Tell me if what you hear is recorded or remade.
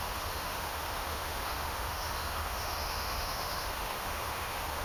remade